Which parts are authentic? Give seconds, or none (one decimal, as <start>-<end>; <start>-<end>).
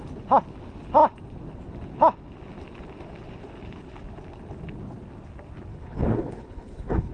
0.0-5.7